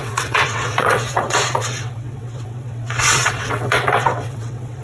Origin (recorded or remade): remade